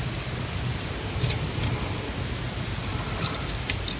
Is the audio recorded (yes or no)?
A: yes